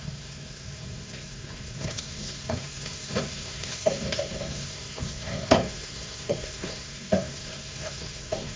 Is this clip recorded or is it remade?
remade